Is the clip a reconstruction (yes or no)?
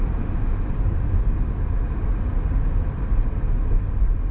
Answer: no